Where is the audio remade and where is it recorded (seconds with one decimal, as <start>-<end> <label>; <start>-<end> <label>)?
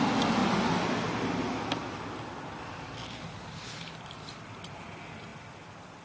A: 0.0-6.0 recorded